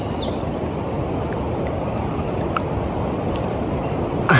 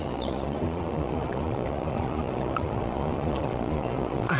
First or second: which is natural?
first